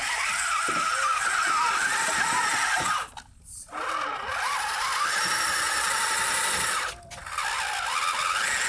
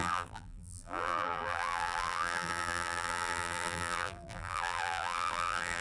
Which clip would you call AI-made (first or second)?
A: second